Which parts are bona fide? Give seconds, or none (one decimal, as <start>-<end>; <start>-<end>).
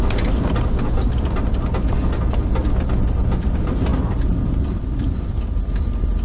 0.0-3.9; 5.4-6.2